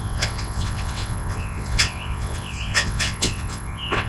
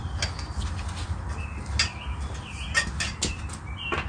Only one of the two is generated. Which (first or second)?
first